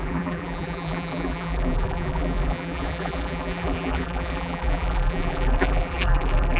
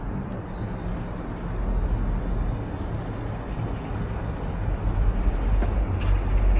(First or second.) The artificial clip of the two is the first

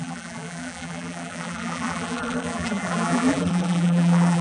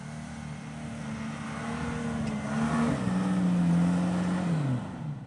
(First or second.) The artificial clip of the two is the first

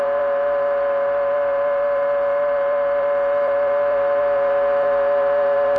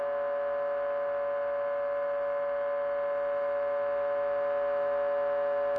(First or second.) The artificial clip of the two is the first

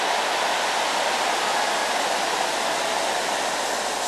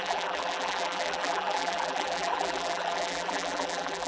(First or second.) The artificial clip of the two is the second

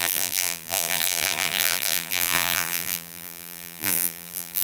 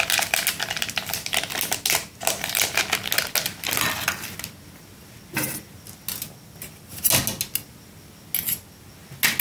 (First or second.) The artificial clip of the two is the first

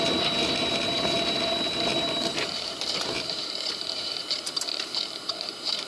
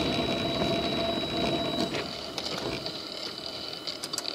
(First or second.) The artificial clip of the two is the first